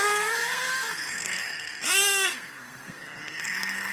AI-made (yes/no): yes